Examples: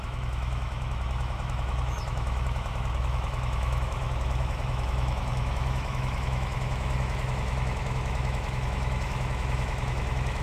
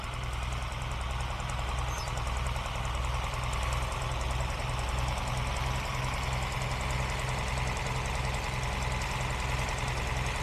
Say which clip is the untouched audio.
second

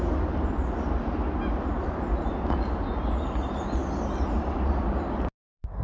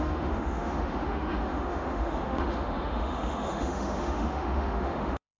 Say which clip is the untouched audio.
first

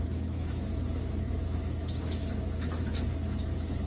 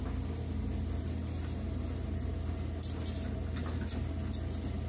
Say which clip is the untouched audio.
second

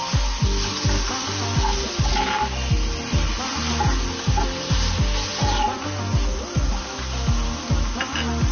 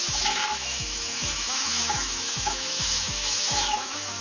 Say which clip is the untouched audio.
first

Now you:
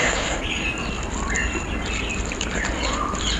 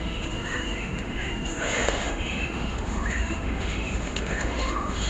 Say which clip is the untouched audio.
first